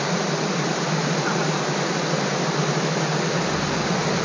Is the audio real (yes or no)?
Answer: yes